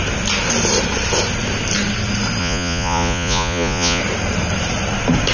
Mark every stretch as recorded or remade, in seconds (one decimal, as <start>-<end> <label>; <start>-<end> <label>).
0.0-2.4 recorded; 2.4-4.0 remade; 4.0-5.3 recorded